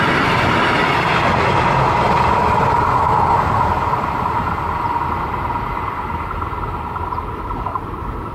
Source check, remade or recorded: recorded